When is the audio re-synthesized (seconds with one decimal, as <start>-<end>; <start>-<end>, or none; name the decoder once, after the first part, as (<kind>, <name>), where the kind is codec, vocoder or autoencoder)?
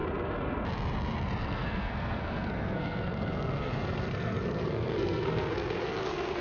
1.4-6.4 (codec, SNAC)